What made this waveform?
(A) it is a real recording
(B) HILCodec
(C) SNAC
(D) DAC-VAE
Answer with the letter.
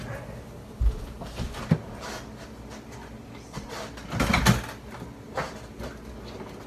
A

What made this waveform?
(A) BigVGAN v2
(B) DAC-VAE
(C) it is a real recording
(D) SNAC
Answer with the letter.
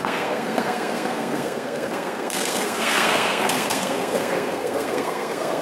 D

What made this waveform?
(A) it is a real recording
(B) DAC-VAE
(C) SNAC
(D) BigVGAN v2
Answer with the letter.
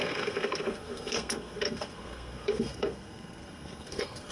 C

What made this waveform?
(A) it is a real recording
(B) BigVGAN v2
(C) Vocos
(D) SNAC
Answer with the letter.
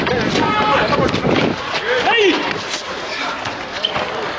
A